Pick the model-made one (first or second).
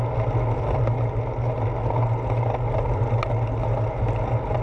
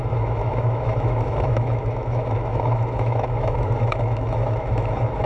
second